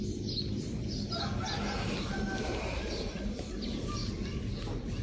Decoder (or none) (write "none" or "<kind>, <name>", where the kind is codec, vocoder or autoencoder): none